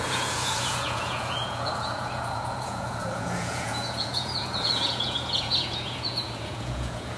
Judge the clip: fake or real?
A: fake